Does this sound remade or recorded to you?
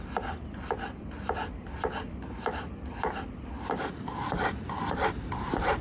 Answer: recorded